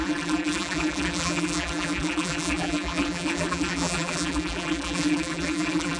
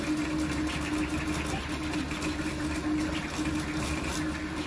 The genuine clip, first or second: second